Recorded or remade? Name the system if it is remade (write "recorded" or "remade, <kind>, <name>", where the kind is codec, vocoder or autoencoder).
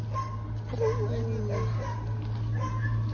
recorded